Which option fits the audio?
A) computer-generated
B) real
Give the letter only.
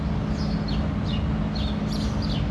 B